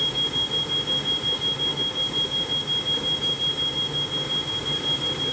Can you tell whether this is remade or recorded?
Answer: recorded